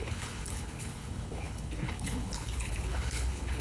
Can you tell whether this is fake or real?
fake